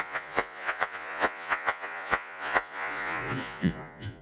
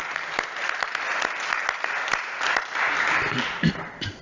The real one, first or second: second